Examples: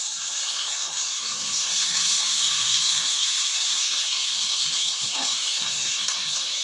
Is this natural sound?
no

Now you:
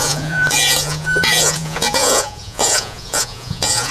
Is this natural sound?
no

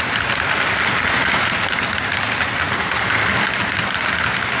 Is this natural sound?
yes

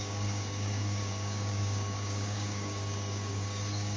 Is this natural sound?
no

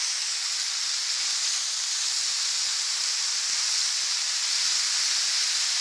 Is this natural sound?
yes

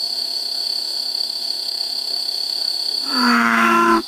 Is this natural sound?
no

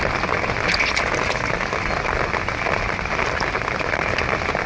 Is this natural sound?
yes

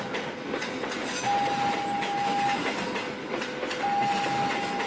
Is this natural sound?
yes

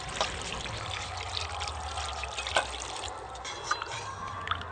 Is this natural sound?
yes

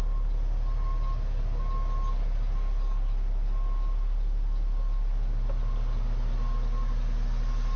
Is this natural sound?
yes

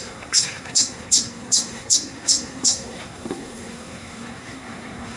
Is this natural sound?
no